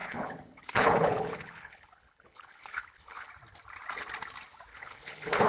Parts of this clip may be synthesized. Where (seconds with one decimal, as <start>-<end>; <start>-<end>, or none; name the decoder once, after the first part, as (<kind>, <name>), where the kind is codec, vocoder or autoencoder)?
0.0-3.3 (codec, HILCodec); 4.7-5.5